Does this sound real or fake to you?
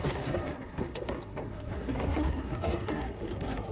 fake